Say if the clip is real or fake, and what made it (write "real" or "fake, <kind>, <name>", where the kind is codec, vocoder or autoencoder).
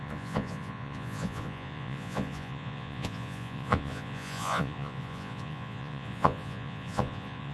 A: fake, vocoder, Vocos